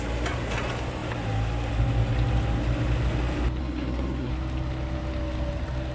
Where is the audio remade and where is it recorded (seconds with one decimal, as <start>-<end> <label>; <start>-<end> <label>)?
0.0-3.6 recorded; 3.6-4.3 remade; 4.3-5.9 recorded